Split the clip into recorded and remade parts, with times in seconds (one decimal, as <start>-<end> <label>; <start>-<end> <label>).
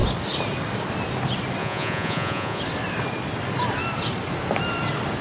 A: 0.0-1.6 recorded; 1.6-2.6 remade; 2.6-5.2 recorded